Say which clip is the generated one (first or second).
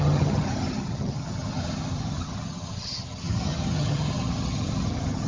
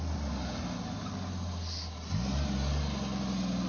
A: first